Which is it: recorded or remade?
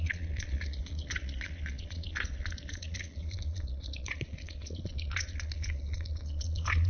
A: remade